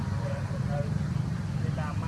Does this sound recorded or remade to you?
remade